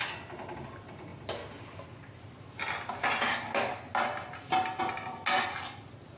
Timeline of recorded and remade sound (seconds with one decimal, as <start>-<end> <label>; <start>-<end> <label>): 0.0-6.2 recorded